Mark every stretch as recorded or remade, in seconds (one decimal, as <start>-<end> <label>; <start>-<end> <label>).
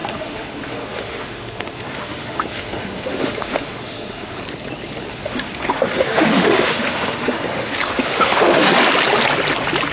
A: 0.0-4.4 remade; 4.4-5.1 recorded; 5.1-8.7 remade; 8.7-9.9 recorded